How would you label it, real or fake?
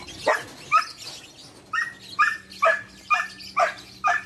real